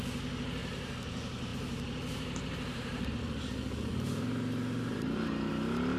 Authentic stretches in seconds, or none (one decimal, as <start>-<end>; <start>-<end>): 0.0-1.5; 3.2-3.9; 5.5-6.0